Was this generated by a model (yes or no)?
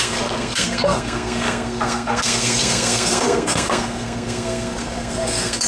yes